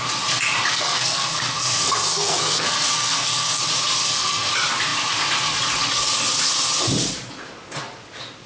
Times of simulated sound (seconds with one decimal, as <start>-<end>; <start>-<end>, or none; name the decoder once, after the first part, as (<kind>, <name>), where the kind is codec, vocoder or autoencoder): 0.7-3.6 (codec, SNAC); 4.0-4.5